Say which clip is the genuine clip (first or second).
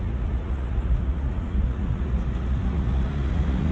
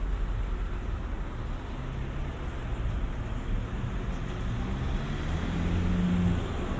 second